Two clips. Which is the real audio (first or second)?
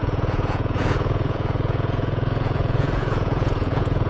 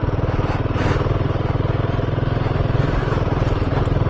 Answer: second